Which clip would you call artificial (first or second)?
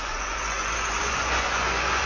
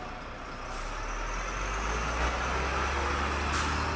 first